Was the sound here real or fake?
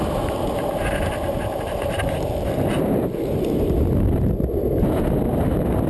real